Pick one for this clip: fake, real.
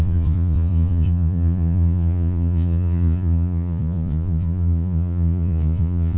fake